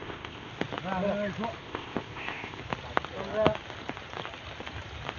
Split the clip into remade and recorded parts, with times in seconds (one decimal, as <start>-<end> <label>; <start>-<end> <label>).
0.0-0.5 remade; 0.5-1.6 recorded; 1.6-2.6 remade; 2.6-5.2 recorded